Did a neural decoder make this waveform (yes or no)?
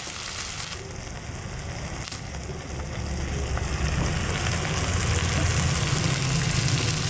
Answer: no